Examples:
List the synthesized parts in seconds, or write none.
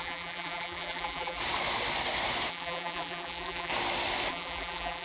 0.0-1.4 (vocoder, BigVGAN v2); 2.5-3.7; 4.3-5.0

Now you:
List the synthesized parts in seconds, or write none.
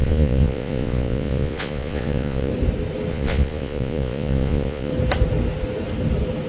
0.0-2.5 (vocoder, Vocos); 3.1-4.9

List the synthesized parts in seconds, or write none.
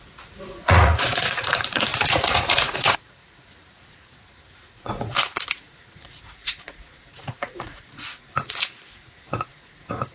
0.0-10.1 (vocoder, Vocos)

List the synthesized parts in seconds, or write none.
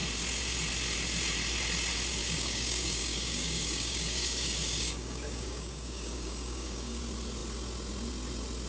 2.2-7.0 (codec, DAC)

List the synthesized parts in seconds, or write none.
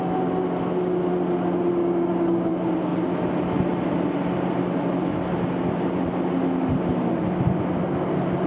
1.8-2.5 (codec, DAC)